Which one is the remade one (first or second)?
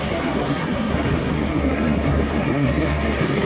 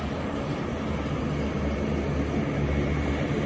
first